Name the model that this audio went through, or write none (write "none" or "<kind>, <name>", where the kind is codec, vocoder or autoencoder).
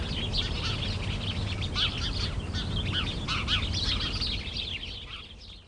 none